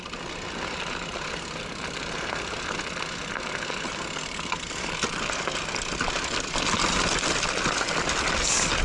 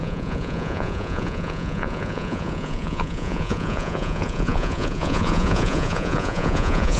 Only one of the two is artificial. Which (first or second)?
second